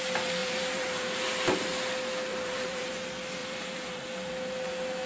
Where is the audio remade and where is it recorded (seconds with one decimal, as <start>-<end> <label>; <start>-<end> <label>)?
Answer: 0.0-0.4 recorded; 0.4-1.2 remade; 1.2-2.3 recorded; 2.3-2.9 remade; 2.9-3.4 recorded; 3.4-4.0 remade; 4.0-5.1 recorded